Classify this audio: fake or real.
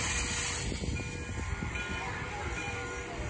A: real